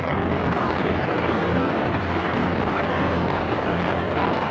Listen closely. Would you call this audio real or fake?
fake